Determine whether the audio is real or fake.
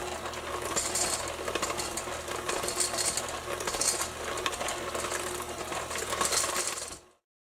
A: real